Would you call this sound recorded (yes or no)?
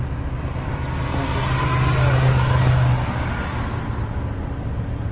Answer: yes